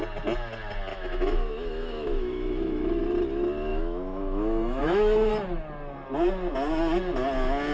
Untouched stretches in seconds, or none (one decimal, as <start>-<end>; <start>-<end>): 0.0-0.9; 3.0-3.7; 5.3-7.7